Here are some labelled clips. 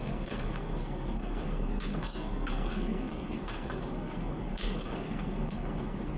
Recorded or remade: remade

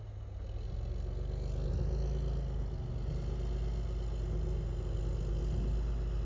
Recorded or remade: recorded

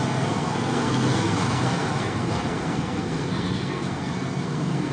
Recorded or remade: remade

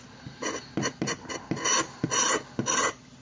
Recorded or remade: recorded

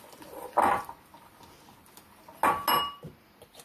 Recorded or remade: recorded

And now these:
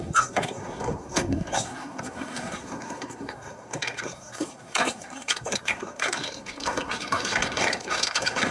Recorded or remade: remade